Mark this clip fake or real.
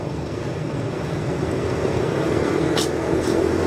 fake